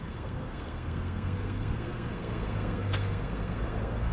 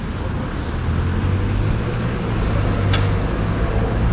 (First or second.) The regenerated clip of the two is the first